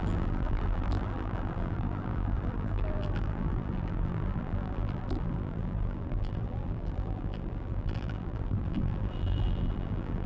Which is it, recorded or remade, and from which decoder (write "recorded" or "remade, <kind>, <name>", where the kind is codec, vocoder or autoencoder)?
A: remade, vocoder, BigVGAN v2